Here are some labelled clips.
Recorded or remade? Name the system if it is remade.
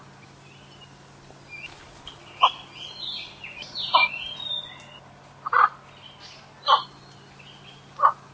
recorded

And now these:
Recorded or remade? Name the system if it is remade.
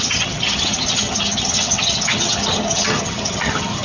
remade, vocoder, HiFi-GAN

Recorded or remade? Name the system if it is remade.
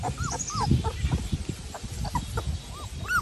recorded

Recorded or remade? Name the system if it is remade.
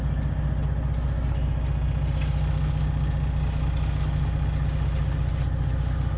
recorded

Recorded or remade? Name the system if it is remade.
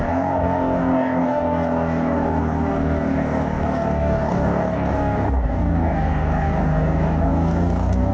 remade, codec, DAC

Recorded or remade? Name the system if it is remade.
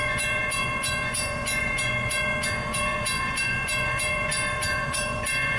remade, vocoder, Vocos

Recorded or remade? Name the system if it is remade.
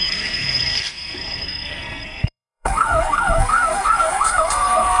remade, codec, SNAC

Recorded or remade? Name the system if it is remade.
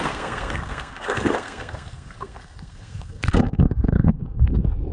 remade, codec, SNAC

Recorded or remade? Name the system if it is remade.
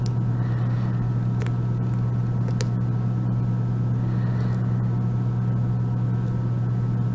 recorded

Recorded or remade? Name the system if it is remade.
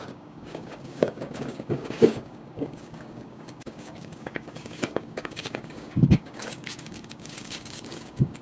remade, codec, DAC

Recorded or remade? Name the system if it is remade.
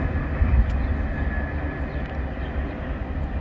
recorded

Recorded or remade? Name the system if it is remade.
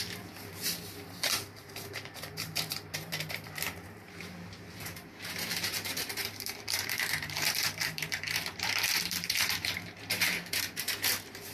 remade, vocoder, BigVGAN v2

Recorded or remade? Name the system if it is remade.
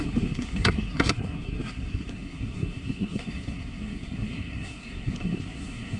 remade, codec, SNAC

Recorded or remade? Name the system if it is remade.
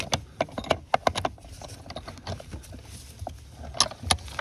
recorded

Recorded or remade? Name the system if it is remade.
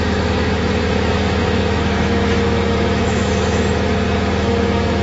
remade, autoencoder, DAC-VAE